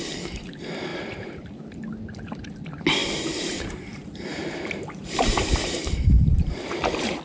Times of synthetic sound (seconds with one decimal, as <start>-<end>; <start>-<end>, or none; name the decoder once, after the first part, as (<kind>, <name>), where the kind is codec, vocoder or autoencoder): 0.9-1.5 (vocoder, BigVGAN v2); 3.0-7.2